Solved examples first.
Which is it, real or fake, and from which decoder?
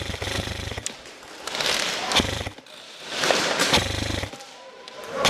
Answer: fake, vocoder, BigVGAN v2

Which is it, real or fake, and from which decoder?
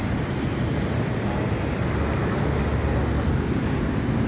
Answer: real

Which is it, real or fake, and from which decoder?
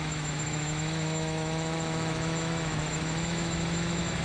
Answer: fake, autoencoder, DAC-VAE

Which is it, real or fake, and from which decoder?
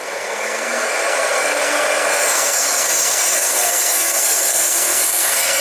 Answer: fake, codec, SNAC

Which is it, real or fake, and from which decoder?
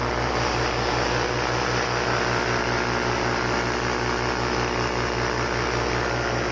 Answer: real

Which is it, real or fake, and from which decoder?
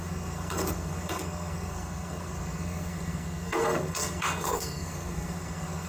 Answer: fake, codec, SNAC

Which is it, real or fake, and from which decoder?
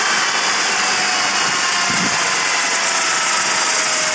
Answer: real